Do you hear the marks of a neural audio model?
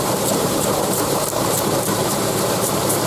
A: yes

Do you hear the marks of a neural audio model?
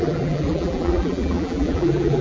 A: yes